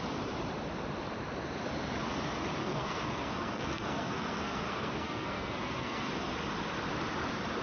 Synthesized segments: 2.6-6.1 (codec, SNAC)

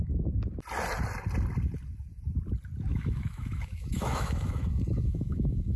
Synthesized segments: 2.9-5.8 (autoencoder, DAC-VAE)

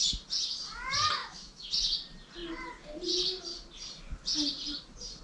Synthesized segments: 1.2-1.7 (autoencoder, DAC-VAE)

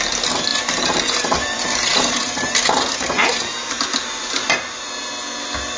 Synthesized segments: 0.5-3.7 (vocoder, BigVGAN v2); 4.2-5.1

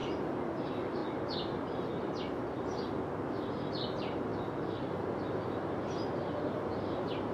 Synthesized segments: 0.5-1.0 (vocoder, BigVGAN v2); 3.7-4.3; 4.8-7.3

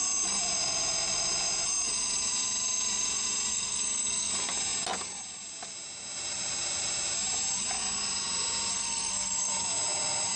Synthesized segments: 3.5-4.3 (codec, SNAC); 8.7-9.5

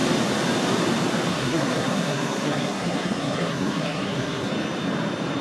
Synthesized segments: 1.3-4.5 (codec, SNAC)

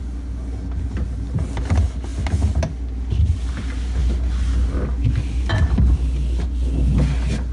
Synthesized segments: none